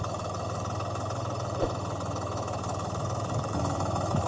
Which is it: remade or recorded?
remade